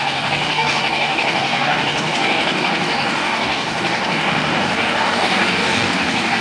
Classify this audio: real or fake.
fake